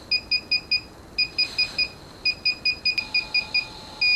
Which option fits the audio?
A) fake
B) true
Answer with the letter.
B